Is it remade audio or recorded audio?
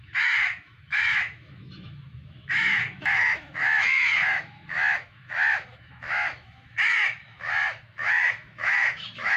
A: remade